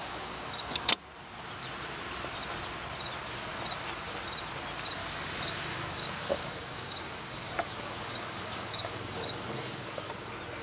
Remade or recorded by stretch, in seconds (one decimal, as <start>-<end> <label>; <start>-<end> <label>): 0.0-0.9 remade; 0.9-5.0 recorded; 5.0-10.1 remade; 10.1-10.6 recorded